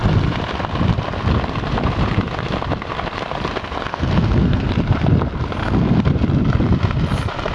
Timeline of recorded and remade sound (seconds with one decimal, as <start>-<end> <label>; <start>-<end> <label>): 0.0-3.9 recorded; 3.9-4.7 remade; 4.7-5.6 recorded; 5.6-6.1 remade; 6.1-7.5 recorded